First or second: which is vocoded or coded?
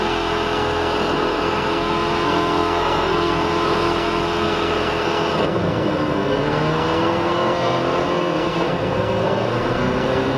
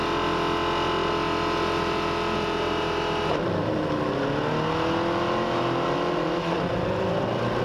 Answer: first